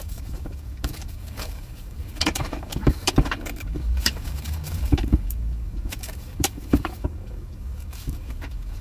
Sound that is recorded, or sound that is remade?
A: remade